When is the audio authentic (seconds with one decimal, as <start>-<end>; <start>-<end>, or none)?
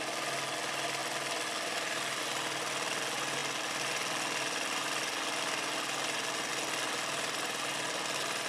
0.0-8.5